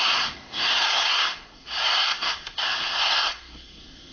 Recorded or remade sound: remade